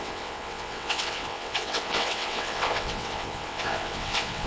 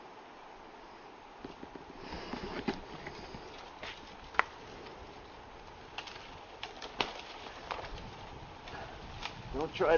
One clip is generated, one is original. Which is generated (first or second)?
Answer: first